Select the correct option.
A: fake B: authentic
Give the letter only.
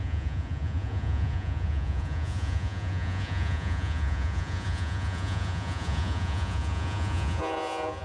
A